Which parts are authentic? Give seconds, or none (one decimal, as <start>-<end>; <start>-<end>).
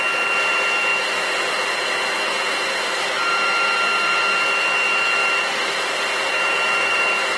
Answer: 0.0-5.2; 7.0-7.4